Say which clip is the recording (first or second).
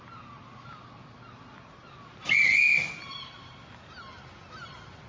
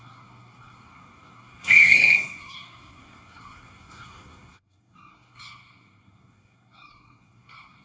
first